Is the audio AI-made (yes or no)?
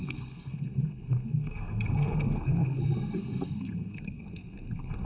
yes